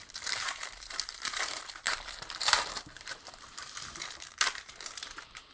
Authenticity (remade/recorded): remade